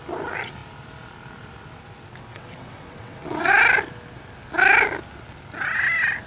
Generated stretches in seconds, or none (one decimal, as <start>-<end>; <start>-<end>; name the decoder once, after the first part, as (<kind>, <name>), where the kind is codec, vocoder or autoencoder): 2.3-3.5 (vocoder, WaveNeXt)